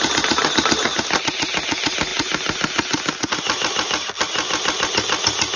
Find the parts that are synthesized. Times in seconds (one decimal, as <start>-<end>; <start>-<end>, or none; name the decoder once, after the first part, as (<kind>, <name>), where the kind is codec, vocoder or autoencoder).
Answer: none